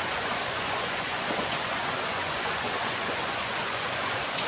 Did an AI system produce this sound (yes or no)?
yes